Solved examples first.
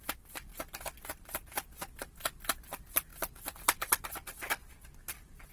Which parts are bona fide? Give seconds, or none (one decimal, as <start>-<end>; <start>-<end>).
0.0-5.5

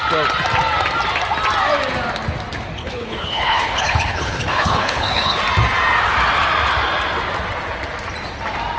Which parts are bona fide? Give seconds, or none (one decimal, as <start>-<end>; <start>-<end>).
0.0-2.8; 5.4-8.8

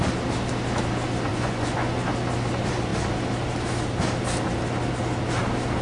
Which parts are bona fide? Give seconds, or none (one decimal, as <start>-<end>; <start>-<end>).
0.0-1.3; 1.9-5.8

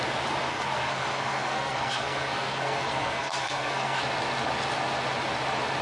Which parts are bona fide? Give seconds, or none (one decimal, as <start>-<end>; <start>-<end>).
0.0-0.5; 4.0-5.8

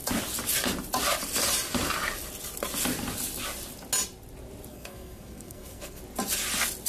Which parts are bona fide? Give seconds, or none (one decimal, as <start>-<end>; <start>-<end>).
0.0-4.7; 6.0-6.9

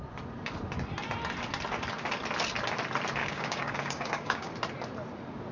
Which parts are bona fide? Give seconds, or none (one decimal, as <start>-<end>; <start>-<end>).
0.0-3.2; 4.5-5.5

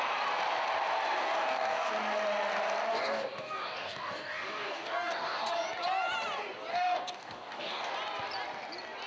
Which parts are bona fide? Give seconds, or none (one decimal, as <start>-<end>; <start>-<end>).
0.0-1.2; 1.9-2.9; 5.5-6.7; 7.9-9.1